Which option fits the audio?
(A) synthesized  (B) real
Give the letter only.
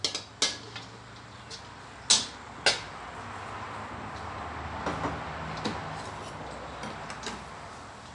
B